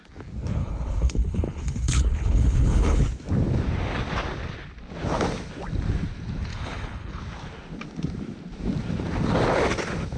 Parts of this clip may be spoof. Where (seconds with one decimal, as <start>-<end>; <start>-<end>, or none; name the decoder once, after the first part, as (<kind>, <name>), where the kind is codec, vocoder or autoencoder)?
0.6-3.0 (codec, HILCodec); 6.5-7.2